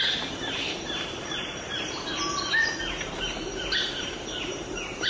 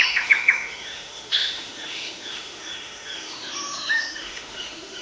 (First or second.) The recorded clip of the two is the first